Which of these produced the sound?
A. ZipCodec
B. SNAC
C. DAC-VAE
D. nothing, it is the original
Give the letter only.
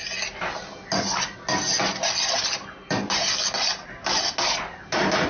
D